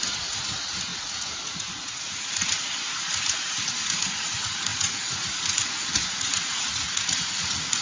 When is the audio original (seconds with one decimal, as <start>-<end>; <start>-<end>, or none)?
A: none